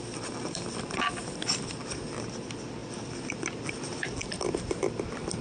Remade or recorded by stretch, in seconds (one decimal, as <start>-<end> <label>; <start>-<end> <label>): 0.0-5.4 recorded